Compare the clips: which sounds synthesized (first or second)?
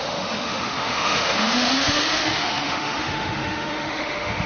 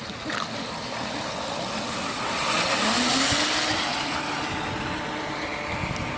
first